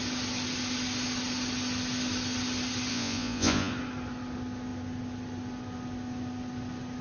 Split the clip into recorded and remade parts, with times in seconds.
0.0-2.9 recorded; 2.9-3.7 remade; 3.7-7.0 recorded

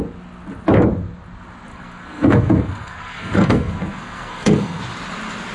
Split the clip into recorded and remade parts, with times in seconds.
0.0-1.7 recorded; 1.7-4.8 remade; 4.8-5.5 recorded

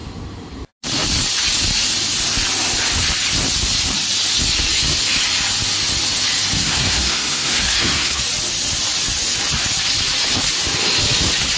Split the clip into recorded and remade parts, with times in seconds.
0.0-6.6 recorded; 6.6-8.2 remade; 8.2-11.6 recorded

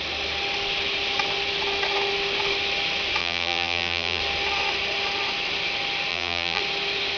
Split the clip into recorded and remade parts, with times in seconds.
0.0-3.2 recorded; 3.2-4.2 remade; 4.2-6.1 recorded; 6.1-6.6 remade; 6.6-7.2 recorded